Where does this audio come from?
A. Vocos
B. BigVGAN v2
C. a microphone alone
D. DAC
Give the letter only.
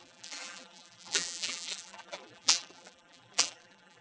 B